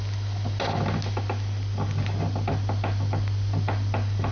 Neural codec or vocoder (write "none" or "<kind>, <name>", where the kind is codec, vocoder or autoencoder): none